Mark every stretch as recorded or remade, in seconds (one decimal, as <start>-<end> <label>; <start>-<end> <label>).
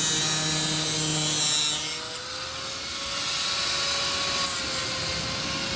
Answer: 0.0-5.8 recorded